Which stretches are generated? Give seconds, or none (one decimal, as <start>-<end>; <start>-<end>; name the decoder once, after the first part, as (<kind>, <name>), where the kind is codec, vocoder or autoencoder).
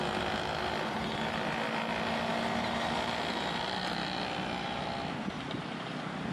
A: none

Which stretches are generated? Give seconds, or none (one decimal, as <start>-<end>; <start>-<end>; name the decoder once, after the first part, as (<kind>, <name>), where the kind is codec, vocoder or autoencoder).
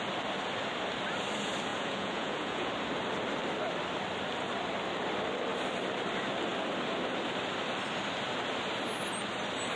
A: 1.7-2.7 (vocoder, Vocos)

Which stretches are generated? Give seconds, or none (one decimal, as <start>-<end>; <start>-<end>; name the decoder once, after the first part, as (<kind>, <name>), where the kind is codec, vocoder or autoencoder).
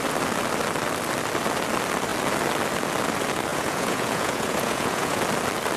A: 3.5-5.2 (vocoder, Vocos)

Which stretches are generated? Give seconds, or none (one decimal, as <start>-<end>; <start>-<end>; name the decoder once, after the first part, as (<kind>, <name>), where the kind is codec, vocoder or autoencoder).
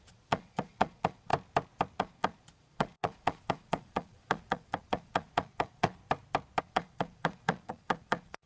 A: 0.0-1.3 (vocoder, Vocos); 2.0-6.0; 6.6-8.5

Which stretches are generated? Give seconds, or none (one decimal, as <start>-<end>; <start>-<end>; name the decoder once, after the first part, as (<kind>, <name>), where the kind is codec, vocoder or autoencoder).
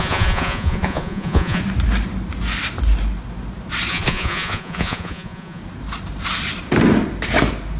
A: 0.0-1.6 (vocoder, Vocos); 3.9-5.6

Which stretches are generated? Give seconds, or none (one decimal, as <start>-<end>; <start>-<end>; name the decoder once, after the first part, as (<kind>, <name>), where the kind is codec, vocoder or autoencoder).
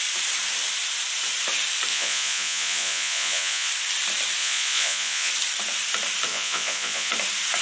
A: 1.9-3.7 (vocoder, Vocos); 4.4-5.3; 6.3-7.1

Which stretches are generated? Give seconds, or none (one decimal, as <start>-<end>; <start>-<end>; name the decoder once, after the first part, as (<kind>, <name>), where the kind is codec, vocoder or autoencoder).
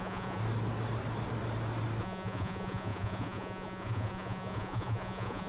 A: 0.0-0.4 (vocoder, Vocos); 2.0-5.5